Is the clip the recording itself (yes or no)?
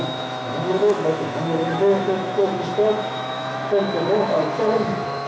no